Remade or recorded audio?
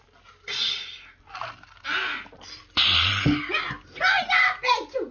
recorded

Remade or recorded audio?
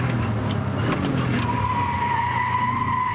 recorded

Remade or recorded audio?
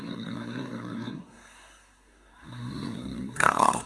remade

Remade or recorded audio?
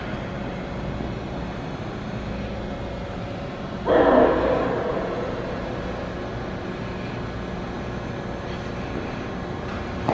recorded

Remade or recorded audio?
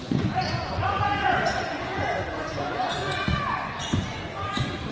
remade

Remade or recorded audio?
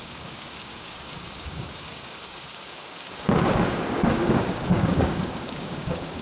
remade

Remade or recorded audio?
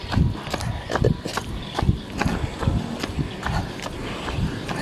recorded